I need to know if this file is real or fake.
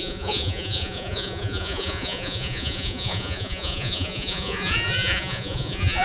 fake